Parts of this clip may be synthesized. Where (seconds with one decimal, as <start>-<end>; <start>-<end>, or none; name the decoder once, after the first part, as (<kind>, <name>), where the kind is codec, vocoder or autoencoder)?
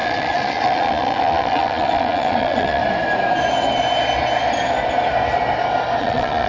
0.0-2.8 (vocoder, Vocos); 6.0-6.5